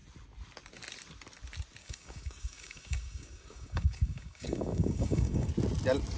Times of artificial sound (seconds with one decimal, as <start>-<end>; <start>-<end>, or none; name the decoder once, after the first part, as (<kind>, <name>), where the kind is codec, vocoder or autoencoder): 1.8-5.5 (codec, DAC)